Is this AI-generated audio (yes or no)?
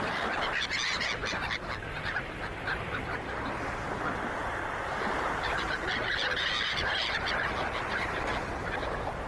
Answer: no